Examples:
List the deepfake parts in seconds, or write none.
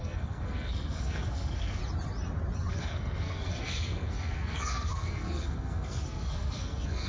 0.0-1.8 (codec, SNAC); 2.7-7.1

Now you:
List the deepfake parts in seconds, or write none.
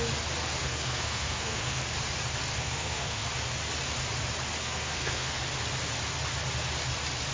0.6-1.8 (codec, SNAC); 2.5-3.3; 4.6-5.4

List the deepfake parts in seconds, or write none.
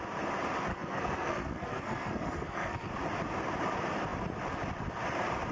0.7-2.9 (codec, SNAC)